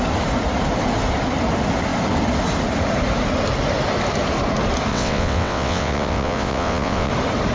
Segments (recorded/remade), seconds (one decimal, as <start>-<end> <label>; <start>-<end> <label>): 0.0-4.9 recorded; 4.9-7.1 remade; 7.1-7.5 recorded